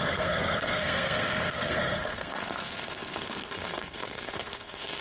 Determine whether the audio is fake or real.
fake